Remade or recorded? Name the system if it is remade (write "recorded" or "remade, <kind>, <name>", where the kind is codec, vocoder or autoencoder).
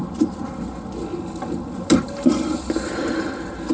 recorded